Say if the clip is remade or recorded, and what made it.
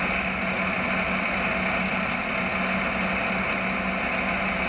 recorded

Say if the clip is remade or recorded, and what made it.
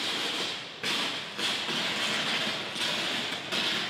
recorded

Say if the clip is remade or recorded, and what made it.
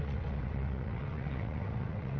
remade, vocoder, WaveNeXt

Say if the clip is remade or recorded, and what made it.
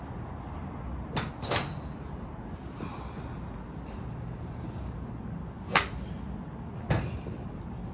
recorded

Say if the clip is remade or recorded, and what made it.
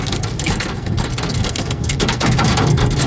remade, codec, SNAC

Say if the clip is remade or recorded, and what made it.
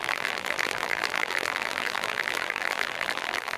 remade, vocoder, BigVGAN v2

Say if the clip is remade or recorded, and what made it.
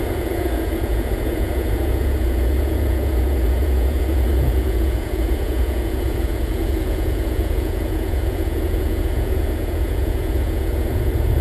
remade, vocoder, Vocos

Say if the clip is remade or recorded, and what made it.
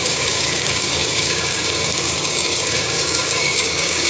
remade, codec, DAC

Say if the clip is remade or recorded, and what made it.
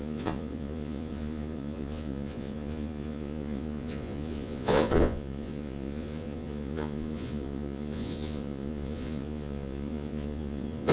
remade, vocoder, Vocos